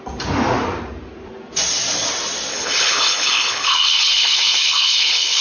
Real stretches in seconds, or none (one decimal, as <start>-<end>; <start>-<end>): 0.0-2.5